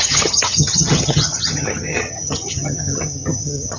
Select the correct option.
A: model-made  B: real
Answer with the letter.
A